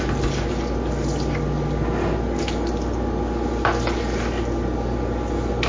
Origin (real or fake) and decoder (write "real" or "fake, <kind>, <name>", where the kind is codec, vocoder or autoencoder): real